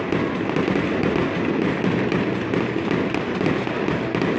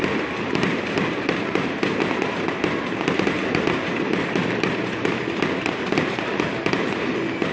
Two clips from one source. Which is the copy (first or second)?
second